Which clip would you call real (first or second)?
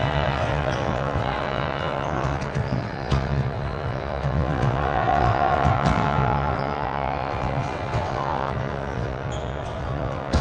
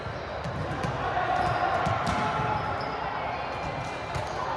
second